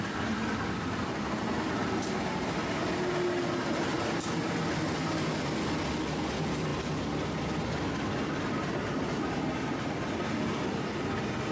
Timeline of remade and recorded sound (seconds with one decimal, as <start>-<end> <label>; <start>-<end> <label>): 0.0-11.5 recorded